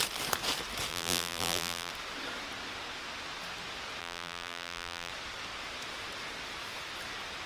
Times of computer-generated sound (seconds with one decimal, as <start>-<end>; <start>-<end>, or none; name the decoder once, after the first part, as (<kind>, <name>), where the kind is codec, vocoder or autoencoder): 0.9-1.9 (vocoder, BigVGAN v2); 4.0-5.1